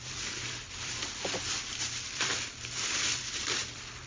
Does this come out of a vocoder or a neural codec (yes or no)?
yes